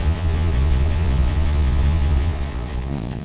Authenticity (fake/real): fake